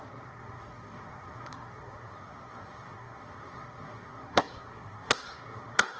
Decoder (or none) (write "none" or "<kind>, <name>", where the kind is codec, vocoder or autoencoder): codec, SNAC